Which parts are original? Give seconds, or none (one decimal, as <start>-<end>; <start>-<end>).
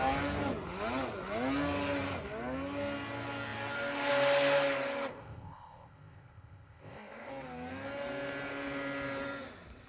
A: 0.0-5.1; 7.3-9.9